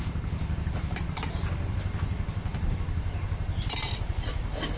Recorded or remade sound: recorded